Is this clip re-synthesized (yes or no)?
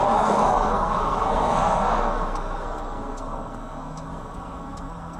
yes